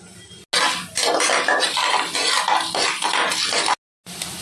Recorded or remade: recorded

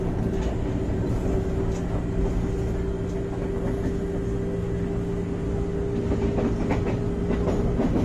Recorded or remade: recorded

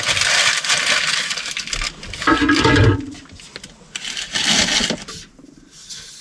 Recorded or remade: recorded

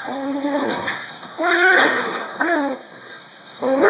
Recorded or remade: remade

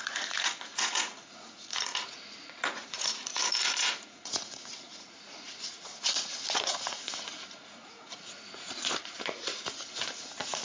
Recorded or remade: remade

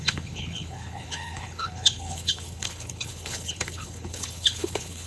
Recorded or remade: remade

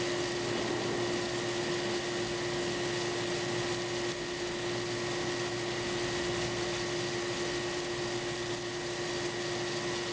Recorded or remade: recorded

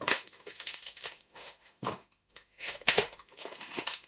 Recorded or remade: remade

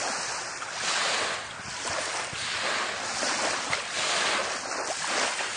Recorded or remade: recorded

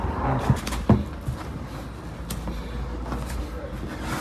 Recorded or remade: recorded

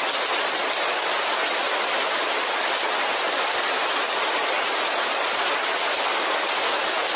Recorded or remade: recorded